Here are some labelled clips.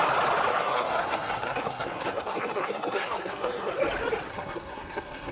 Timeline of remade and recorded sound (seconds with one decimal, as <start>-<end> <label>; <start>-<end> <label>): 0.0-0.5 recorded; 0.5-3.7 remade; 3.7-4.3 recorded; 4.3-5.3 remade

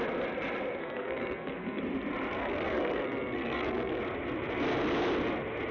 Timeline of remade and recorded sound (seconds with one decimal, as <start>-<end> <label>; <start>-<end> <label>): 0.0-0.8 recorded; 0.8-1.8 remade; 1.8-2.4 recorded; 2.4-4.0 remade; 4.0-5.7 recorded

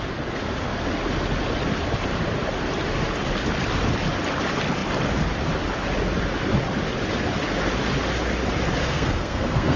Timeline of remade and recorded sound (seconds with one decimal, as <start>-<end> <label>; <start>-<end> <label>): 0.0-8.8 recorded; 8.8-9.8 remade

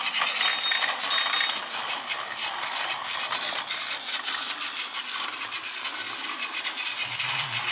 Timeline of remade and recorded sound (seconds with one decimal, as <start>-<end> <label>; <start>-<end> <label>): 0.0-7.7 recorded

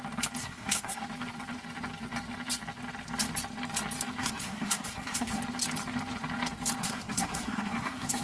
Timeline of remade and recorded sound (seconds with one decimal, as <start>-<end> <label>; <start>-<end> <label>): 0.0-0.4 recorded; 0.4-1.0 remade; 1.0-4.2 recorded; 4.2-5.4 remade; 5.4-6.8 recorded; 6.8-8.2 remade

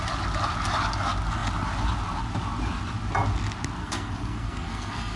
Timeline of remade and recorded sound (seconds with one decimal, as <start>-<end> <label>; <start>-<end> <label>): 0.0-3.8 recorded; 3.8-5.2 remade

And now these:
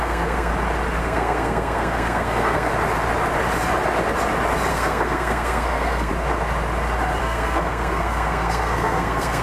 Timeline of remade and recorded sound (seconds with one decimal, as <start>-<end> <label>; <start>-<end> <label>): 0.0-0.5 remade; 0.5-1.0 recorded; 1.0-2.7 remade; 2.7-4.7 recorded; 4.7-6.1 remade; 6.1-7.2 recorded; 7.2-9.4 remade

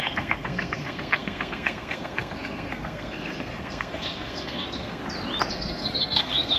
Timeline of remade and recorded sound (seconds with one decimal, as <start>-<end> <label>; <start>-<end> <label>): 0.0-5.0 remade; 5.0-5.5 recorded; 5.5-6.6 remade